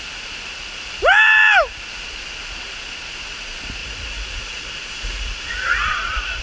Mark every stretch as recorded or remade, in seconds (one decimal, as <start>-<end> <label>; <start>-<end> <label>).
0.0-3.8 recorded; 3.8-6.4 remade

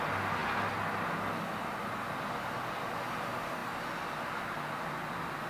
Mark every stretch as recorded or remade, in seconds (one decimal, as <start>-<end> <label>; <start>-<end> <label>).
0.0-5.5 recorded

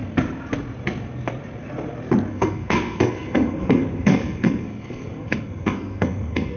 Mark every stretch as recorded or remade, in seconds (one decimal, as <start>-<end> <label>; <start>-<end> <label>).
0.0-2.3 recorded; 2.3-6.6 remade

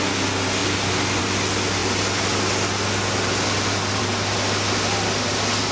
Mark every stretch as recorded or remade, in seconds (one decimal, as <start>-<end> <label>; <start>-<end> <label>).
0.0-5.7 recorded

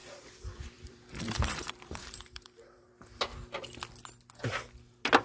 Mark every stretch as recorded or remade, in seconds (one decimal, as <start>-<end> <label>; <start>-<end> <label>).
0.0-2.9 remade; 2.9-5.2 recorded